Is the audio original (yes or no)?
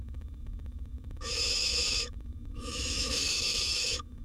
no